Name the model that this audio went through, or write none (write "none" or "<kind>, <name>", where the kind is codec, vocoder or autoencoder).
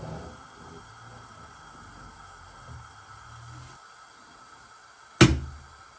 none